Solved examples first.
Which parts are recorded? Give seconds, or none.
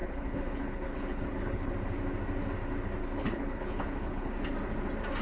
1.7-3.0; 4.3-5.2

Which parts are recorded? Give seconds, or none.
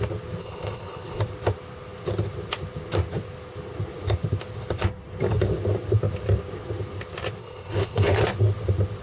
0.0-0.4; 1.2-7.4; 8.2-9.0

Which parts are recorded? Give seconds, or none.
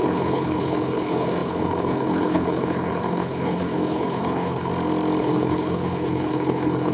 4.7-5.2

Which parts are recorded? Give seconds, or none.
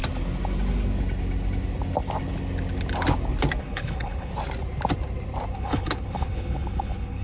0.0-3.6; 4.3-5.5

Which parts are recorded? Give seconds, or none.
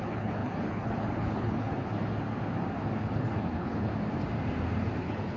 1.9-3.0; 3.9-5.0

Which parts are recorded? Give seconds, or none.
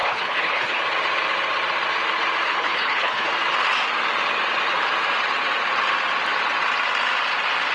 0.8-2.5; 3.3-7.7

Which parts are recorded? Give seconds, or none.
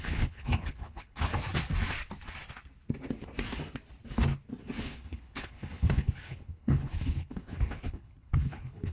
1.3-4.8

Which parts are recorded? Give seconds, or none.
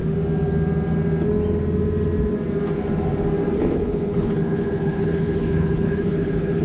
0.0-3.6